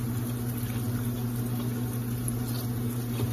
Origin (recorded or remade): recorded